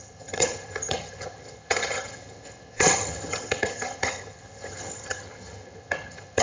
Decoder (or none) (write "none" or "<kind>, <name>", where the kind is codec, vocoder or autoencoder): vocoder, HiFi-GAN